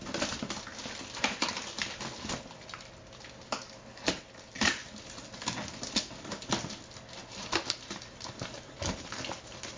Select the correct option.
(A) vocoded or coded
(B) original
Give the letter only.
B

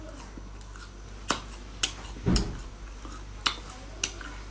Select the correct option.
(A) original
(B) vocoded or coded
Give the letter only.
A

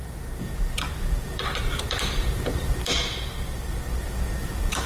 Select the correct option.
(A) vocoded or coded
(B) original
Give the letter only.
A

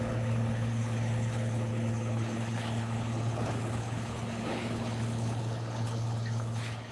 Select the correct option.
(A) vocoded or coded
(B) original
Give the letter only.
A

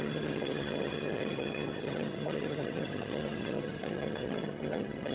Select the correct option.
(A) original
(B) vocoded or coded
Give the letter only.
B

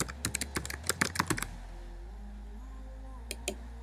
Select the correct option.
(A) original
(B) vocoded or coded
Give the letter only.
A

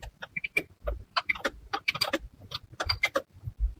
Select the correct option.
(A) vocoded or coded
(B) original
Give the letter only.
A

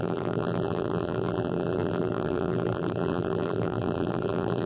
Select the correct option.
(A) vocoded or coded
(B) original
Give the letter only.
A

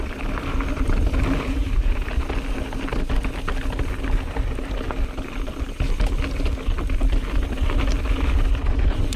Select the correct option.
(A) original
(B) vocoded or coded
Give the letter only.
A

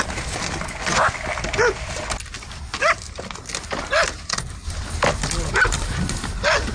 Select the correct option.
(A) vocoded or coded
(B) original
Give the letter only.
B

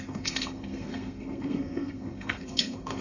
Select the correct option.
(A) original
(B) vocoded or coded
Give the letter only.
B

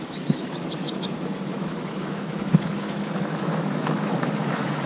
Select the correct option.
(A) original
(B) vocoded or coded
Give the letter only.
B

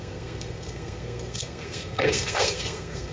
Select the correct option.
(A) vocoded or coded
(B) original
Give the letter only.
A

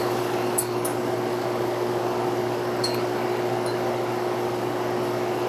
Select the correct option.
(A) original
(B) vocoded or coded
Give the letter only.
B